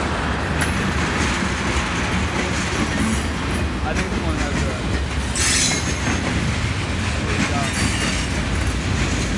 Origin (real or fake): real